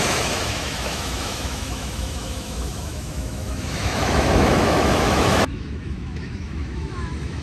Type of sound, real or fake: fake